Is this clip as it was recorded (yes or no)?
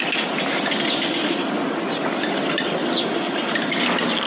yes